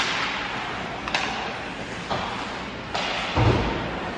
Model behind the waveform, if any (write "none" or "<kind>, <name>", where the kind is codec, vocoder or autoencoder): none